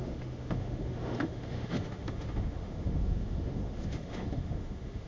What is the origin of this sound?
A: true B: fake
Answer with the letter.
B